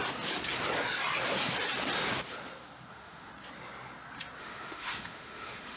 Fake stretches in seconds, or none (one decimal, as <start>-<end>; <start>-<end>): 2.9-3.3; 4.4-5.8